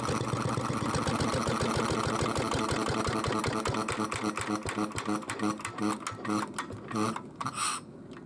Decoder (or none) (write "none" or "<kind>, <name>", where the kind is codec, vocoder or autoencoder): none